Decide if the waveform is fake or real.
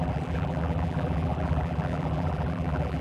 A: fake